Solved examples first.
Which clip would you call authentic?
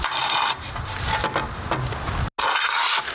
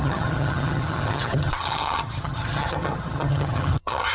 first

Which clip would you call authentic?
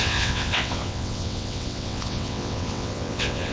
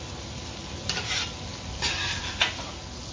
second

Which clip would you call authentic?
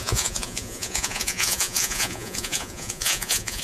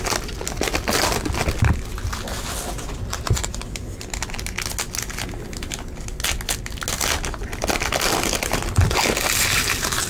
second